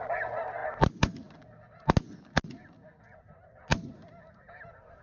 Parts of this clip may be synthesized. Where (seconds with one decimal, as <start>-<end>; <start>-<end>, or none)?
none